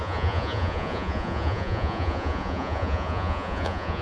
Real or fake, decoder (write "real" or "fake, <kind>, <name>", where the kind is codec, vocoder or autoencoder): fake, vocoder, Vocos